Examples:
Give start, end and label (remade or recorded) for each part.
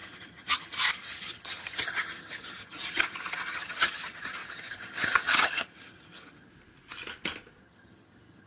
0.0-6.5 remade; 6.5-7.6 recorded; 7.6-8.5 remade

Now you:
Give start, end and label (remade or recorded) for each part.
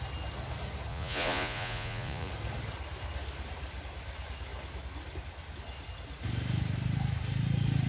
0.0-0.9 recorded; 0.9-2.3 remade; 2.3-7.9 recorded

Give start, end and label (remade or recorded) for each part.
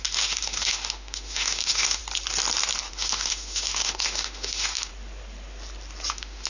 0.0-2.0 remade; 2.0-2.9 recorded; 2.9-4.9 remade; 4.9-6.1 recorded; 6.1-6.5 remade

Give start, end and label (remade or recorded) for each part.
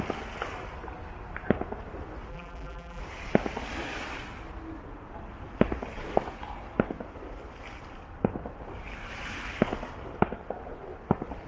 0.0-2.3 recorded; 2.3-3.0 remade; 3.0-11.5 recorded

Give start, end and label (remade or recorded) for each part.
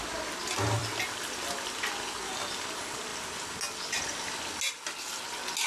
0.0-5.7 recorded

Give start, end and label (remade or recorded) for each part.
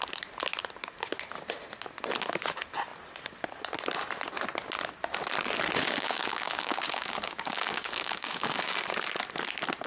0.0-5.8 recorded; 5.8-8.8 remade; 8.8-9.9 recorded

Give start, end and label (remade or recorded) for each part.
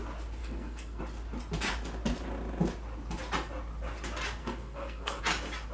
0.0-0.4 recorded; 0.4-1.0 remade; 1.0-4.4 recorded; 4.4-5.2 remade; 5.2-5.7 recorded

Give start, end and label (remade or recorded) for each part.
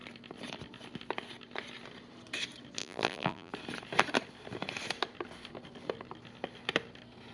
0.0-2.8 recorded; 2.8-3.5 remade; 3.5-7.3 recorded